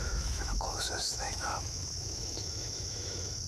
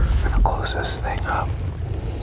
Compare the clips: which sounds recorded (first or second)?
second